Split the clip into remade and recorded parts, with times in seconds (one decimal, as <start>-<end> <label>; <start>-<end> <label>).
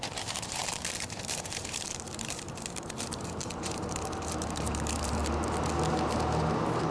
0.0-5.2 remade; 5.2-6.9 recorded